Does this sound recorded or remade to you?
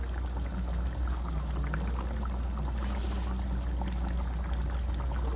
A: recorded